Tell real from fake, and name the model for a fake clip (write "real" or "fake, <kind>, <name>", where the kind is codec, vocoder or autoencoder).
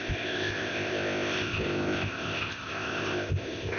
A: fake, codec, ZipCodec